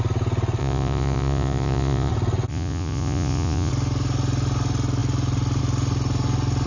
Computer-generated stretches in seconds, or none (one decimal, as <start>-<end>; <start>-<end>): 0.6-2.1; 2.5-3.7